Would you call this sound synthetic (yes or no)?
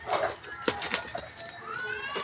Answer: no